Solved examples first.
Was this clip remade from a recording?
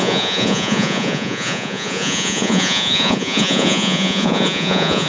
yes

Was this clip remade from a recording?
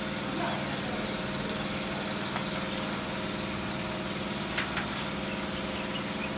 no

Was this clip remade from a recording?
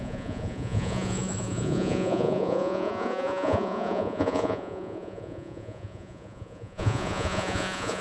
yes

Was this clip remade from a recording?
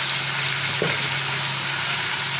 no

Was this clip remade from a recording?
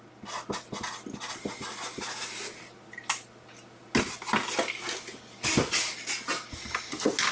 no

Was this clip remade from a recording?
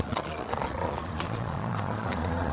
yes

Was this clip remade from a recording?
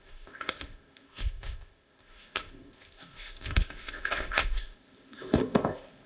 yes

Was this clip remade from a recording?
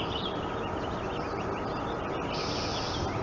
no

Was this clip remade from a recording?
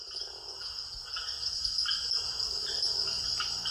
no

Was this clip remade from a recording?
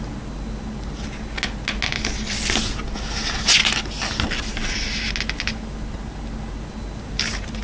no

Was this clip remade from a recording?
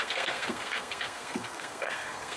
yes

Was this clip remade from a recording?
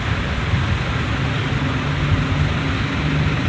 no